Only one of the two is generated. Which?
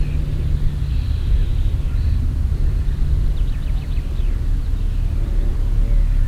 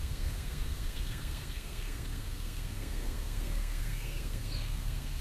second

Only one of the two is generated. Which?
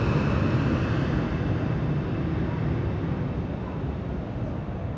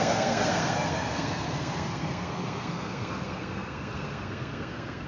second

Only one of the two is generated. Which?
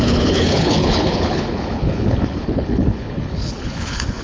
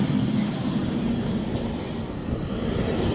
first